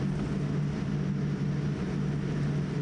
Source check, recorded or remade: recorded